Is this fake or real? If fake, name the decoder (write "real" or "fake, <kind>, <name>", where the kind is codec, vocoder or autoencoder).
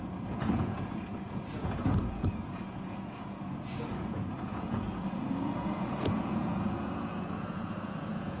fake, vocoder, Vocos